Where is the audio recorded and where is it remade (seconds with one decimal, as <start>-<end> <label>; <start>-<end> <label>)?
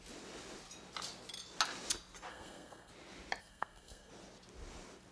0.0-2.3 recorded; 2.3-2.9 remade; 2.9-3.4 recorded; 3.4-4.1 remade; 4.1-5.1 recorded